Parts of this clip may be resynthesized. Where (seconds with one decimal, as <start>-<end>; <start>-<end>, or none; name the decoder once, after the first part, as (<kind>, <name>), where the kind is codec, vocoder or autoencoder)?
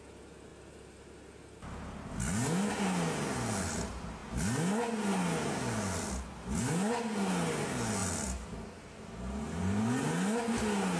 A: none